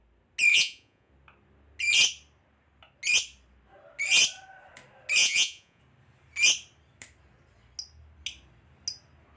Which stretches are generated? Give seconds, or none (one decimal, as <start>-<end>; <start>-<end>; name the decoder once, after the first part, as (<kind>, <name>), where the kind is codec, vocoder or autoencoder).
0.5-1.1 (vocoder, Vocos); 5.2-5.8